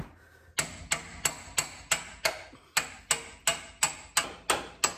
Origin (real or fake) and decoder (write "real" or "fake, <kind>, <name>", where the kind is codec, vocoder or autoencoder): real